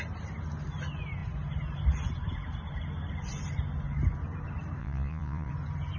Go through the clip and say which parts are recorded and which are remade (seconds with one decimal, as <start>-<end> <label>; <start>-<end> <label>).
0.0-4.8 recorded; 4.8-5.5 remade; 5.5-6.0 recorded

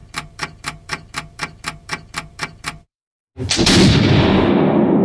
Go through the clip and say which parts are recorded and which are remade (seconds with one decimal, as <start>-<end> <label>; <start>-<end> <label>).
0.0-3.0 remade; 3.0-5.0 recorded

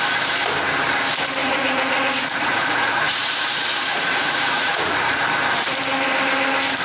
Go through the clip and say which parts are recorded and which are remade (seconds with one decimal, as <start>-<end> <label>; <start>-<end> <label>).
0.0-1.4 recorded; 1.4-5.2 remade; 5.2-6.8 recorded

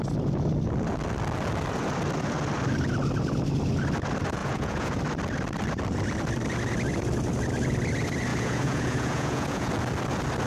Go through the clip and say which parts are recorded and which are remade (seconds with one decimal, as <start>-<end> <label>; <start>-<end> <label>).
0.0-4.4 recorded; 4.4-5.0 remade; 5.0-8.3 recorded; 8.3-9.7 remade; 9.7-10.5 recorded